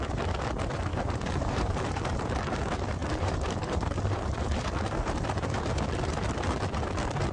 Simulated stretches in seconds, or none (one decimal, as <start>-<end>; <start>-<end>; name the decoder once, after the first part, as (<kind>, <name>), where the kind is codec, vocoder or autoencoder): 0.9-2.6 (vocoder, BigVGAN v2); 3.0-5.8